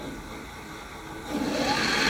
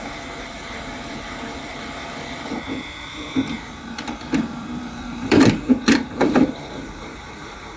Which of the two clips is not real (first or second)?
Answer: second